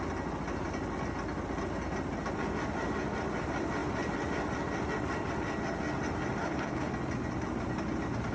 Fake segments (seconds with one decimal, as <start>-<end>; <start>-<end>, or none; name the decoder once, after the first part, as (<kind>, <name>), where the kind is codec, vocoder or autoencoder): 6.4-6.9 (codec, HILCodec)